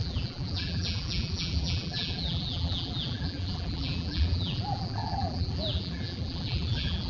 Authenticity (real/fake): fake